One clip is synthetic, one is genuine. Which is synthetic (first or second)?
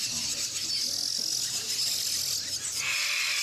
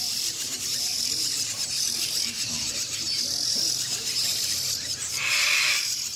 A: second